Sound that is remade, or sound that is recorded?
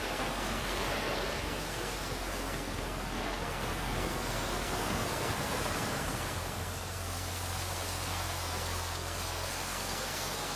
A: remade